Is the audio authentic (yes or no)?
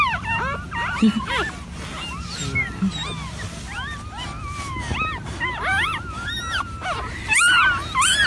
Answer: yes